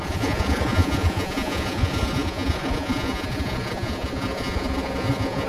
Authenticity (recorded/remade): remade